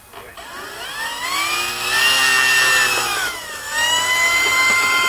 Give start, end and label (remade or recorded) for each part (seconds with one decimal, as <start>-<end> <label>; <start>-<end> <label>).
0.0-3.1 recorded; 3.1-5.1 remade